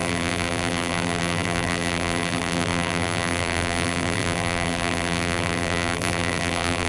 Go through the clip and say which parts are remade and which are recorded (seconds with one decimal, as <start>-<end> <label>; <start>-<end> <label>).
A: 0.0-6.9 remade